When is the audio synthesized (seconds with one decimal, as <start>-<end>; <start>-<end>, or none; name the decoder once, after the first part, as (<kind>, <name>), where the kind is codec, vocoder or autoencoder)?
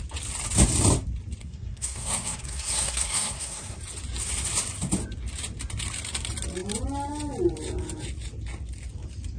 1.4-3.8 (codec, SNAC)